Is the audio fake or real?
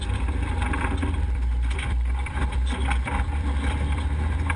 fake